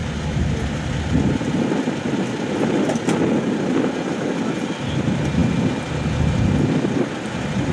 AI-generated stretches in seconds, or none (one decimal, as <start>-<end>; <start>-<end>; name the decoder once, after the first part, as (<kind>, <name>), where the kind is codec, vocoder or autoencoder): none

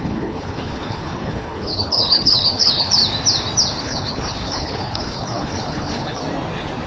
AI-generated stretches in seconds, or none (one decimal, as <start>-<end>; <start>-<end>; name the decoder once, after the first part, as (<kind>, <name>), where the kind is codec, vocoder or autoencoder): 0.0-3.0 (codec, HILCodec); 3.8-6.2

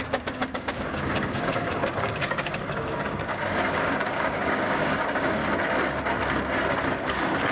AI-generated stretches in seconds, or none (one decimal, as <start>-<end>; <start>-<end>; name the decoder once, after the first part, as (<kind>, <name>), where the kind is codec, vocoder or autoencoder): 0.0-5.4 (codec, DAC); 7.0-7.5